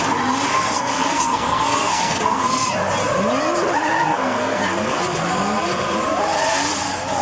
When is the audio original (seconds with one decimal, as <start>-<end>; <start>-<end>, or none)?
0.0-0.5; 2.7-4.1; 5.0-7.2